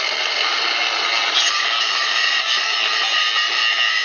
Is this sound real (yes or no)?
yes